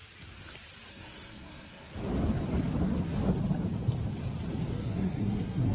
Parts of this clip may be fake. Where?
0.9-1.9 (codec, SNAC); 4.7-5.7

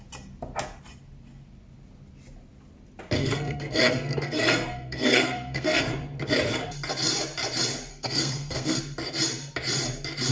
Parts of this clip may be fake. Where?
3.2-5.8 (codec, SNAC); 7.9-8.8

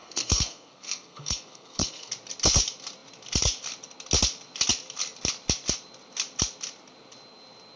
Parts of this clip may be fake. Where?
0.0-2.1 (codec, SNAC)

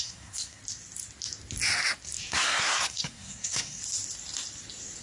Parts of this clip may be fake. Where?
0.0-0.6 (codec, SNAC); 2.3-3.8